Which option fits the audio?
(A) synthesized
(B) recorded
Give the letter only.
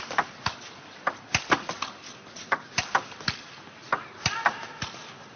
B